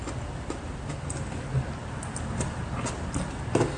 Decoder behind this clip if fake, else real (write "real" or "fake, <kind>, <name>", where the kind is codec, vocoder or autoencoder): real